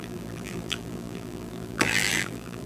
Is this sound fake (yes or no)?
yes